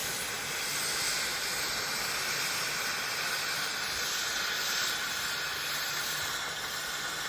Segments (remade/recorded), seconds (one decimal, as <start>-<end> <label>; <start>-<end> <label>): 0.0-7.3 recorded